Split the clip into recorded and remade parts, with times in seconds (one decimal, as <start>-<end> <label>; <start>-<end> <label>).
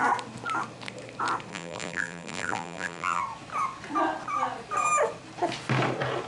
0.0-1.5 recorded; 1.5-3.2 remade; 3.2-6.3 recorded